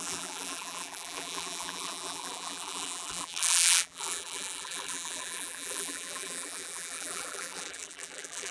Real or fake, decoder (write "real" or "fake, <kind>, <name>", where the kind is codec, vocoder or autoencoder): fake, vocoder, BigVGAN v2